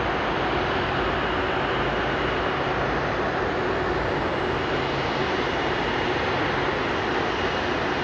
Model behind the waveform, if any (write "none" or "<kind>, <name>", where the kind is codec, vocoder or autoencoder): none